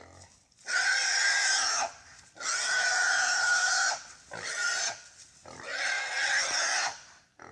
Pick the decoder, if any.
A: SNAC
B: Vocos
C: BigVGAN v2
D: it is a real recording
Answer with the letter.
D